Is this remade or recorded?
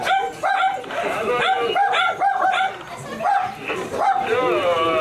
recorded